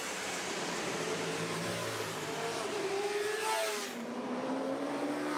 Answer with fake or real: fake